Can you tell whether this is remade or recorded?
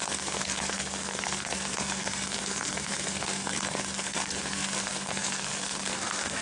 remade